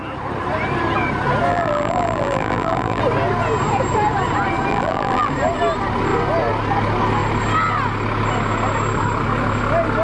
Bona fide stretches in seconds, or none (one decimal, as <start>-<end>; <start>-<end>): 0.0-1.5; 3.0-4.7; 5.3-10.0